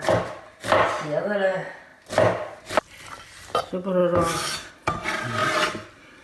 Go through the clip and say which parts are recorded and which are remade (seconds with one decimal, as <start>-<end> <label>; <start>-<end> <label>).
0.0-4.0 recorded; 4.0-4.7 remade; 4.7-6.2 recorded